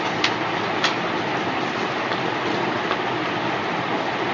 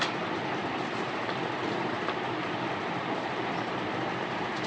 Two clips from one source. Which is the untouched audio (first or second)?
first